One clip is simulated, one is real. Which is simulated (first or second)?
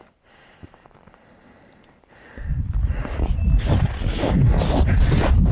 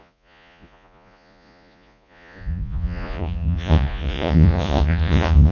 second